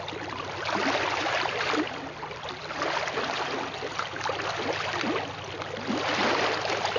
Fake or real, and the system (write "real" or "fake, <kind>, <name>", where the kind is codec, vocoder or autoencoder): real